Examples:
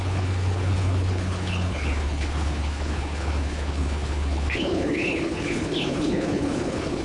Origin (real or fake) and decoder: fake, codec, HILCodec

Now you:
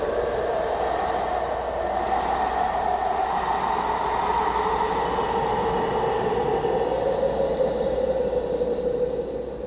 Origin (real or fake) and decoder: real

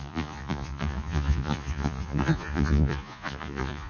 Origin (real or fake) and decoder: fake, vocoder, Vocos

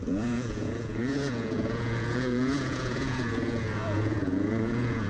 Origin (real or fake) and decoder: fake, vocoder, Vocos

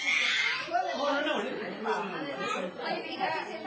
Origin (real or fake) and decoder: real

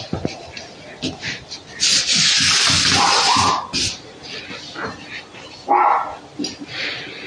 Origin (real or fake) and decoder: real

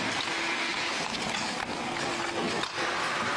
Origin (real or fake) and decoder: real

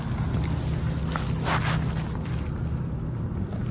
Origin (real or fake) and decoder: real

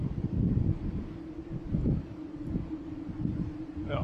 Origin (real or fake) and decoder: real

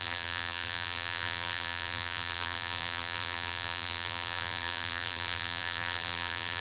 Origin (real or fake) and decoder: fake, vocoder, BigVGAN v2